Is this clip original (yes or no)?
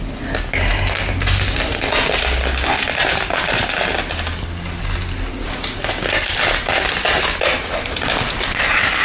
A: yes